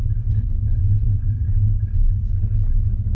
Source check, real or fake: fake